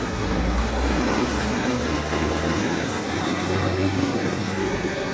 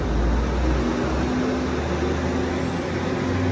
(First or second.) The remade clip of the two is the first